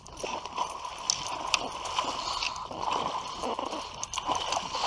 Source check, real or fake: real